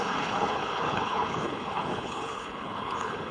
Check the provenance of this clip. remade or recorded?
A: remade